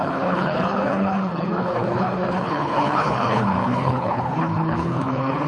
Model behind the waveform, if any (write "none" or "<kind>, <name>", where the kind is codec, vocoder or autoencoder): codec, HILCodec